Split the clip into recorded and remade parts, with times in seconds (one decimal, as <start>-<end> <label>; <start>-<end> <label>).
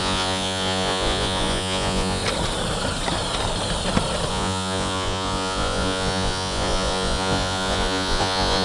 0.0-2.2 remade; 2.2-4.3 recorded; 4.3-8.6 remade